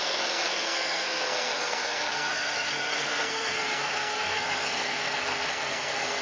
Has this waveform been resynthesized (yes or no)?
yes